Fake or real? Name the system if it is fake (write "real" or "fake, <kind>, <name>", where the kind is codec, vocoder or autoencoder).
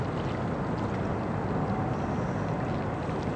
real